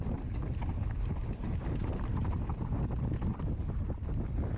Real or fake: real